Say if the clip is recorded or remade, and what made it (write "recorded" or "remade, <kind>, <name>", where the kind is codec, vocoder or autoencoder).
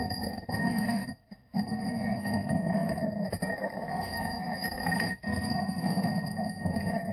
remade, codec, SNAC